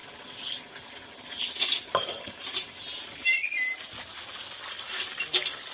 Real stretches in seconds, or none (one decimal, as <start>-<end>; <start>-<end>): 0.0-5.7